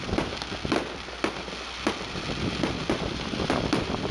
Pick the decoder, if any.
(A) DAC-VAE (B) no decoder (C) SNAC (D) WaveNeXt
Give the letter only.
B